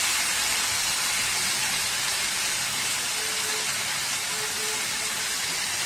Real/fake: real